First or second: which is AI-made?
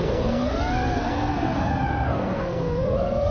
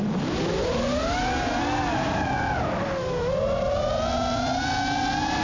first